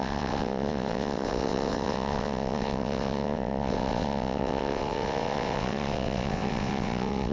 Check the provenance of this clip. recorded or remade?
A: remade